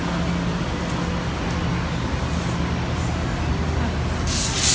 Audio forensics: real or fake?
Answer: real